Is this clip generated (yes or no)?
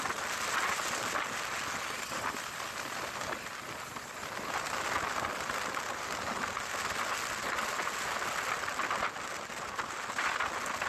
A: no